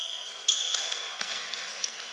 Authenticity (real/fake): fake